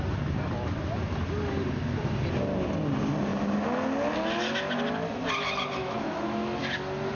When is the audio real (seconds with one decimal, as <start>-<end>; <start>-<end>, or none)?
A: 0.0-5.8; 6.6-7.1